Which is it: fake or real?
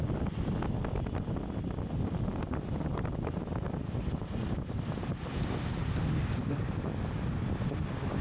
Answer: real